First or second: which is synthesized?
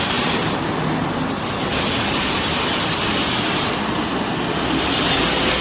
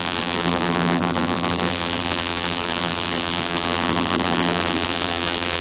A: second